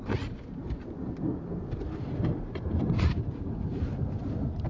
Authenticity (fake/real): real